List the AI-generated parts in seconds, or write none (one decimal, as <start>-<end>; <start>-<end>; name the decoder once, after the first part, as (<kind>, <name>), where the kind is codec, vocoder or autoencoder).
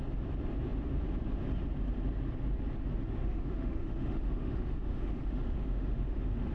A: 3.2-6.5 (autoencoder, DAC-VAE)